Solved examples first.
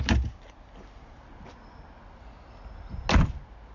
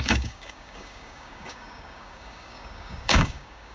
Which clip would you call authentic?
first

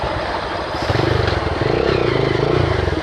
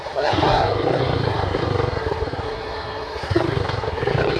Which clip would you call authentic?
first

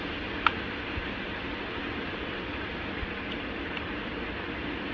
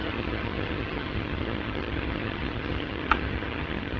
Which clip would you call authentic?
first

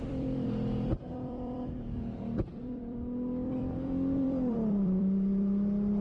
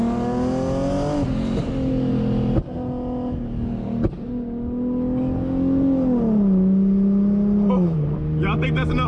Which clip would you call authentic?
second